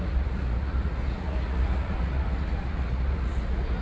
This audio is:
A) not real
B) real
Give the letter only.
A